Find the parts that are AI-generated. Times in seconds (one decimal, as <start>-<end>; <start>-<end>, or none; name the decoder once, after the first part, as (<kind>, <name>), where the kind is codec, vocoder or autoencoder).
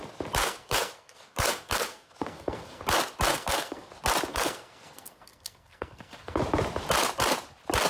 0.4-2.8 (codec, SNAC); 3.3-3.9; 4.3-6.4